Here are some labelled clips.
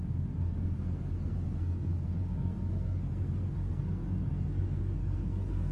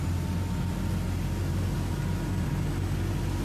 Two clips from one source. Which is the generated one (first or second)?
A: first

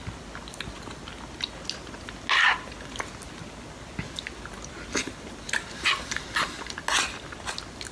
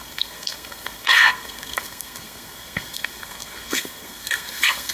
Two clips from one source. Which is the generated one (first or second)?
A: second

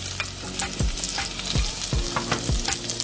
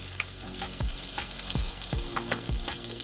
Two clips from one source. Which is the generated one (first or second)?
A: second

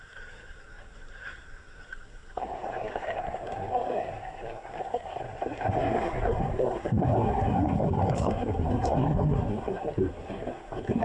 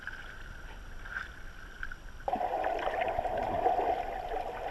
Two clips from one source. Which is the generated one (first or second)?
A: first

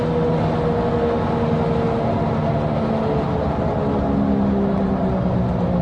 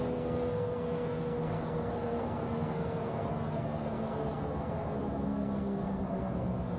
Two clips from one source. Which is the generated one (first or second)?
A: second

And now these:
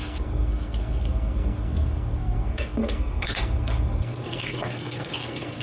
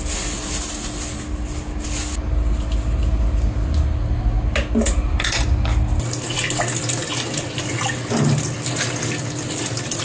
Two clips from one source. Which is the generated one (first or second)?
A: first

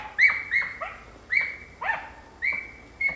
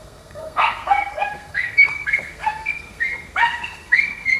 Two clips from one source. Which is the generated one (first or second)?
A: second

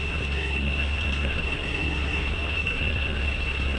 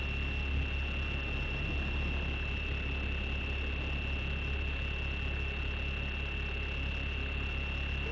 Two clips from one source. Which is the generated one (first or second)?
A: first